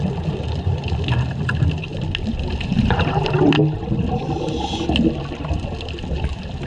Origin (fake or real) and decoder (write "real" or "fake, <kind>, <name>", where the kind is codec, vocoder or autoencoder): real